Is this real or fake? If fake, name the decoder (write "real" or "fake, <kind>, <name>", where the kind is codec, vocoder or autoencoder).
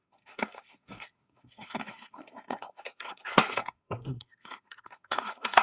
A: fake, codec, SNAC